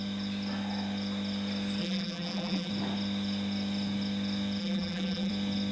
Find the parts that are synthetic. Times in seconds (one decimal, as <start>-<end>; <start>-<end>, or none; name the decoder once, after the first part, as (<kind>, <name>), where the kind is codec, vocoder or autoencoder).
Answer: 1.8-2.7 (vocoder, BigVGAN v2); 4.6-5.3